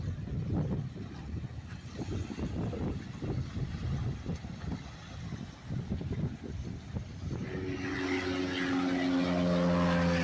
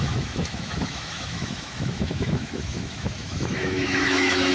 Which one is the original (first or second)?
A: first